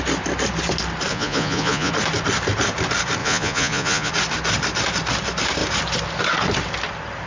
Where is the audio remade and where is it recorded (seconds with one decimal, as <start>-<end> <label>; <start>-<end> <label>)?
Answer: 0.0-1.1 recorded; 1.1-1.9 remade; 1.9-3.2 recorded; 3.2-4.1 remade; 4.1-7.3 recorded